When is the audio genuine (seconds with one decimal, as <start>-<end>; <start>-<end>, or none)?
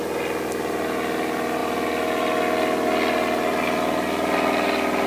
0.0-5.1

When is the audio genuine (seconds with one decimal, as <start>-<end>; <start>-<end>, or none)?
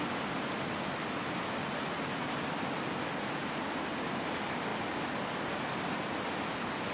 0.0-6.9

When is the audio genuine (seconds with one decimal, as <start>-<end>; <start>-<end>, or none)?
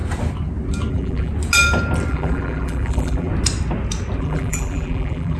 0.0-0.9; 1.3-2.1; 3.3-4.2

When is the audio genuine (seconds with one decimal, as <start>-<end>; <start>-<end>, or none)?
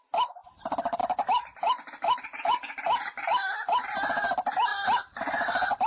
0.0-0.4; 3.9-4.7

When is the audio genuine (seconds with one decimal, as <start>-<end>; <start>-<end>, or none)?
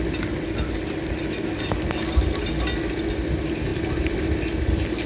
0.0-5.1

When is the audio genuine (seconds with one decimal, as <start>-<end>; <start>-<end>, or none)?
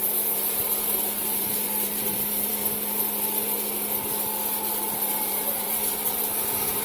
0.0-1.2; 2.5-5.1; 6.2-6.8